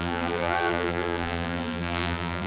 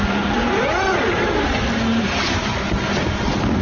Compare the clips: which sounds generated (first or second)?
first